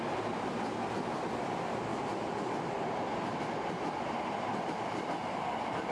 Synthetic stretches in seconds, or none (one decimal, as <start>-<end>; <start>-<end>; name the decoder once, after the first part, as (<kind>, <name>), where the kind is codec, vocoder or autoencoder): none